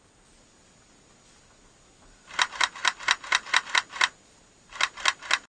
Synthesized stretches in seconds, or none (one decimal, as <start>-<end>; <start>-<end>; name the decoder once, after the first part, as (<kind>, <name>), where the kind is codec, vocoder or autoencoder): none